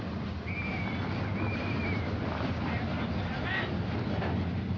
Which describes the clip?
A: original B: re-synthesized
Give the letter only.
A